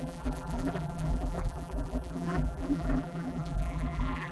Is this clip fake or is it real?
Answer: fake